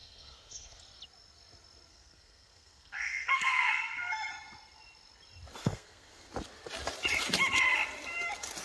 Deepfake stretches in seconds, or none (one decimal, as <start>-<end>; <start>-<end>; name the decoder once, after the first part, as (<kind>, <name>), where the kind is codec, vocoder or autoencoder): 0.0-0.8 (codec, SNAC); 1.9-4.3; 5.6-6.3